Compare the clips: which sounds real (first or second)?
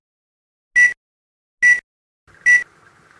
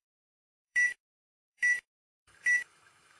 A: first